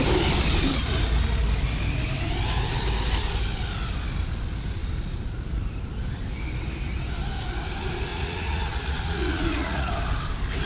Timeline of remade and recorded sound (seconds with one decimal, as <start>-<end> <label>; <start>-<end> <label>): 0.0-8.1 recorded; 8.1-9.9 remade; 9.9-10.7 recorded